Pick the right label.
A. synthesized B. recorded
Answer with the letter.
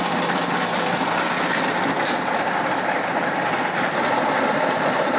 B